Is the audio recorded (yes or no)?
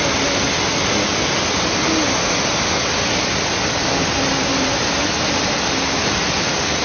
yes